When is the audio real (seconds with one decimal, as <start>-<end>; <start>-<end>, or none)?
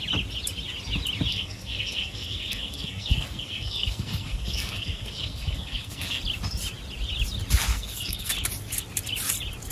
0.0-1.3; 6.2-7.7; 8.3-9.7